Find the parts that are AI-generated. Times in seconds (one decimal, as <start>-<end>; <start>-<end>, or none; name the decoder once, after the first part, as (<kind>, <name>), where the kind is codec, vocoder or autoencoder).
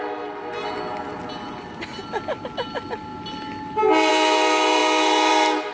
none